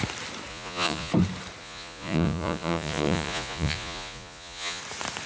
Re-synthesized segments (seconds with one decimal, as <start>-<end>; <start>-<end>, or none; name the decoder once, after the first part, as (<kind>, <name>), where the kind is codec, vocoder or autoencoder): 0.5-1.1 (vocoder, Vocos); 1.6-4.8